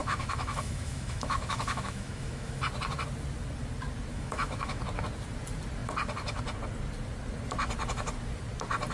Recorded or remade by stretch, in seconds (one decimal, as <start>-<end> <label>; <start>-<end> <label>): 0.0-2.6 remade; 2.6-4.1 recorded; 4.1-4.8 remade; 4.8-8.9 recorded